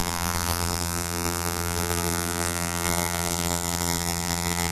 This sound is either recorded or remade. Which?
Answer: remade